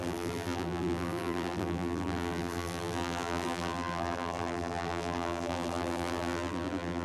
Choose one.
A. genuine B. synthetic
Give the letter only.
B